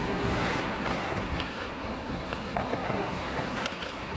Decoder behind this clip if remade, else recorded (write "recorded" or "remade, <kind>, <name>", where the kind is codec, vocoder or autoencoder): remade, codec, SNAC